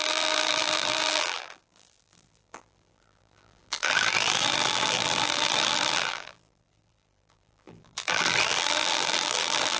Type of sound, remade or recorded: remade